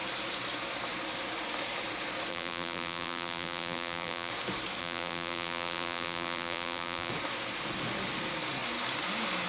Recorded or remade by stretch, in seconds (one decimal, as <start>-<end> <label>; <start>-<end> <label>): 0.0-2.3 recorded; 2.3-4.3 remade; 4.3-4.8 recorded; 4.8-7.1 remade; 7.1-9.5 recorded